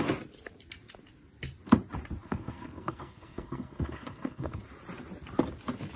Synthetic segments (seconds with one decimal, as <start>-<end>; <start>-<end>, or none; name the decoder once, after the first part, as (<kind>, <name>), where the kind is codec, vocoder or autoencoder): 2.2-4.6 (codec, SNAC)